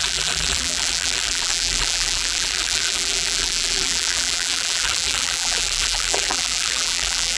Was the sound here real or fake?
fake